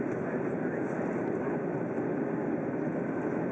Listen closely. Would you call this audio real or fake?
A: real